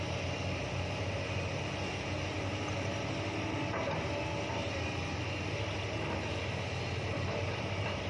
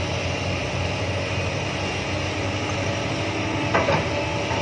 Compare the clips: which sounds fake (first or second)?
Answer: first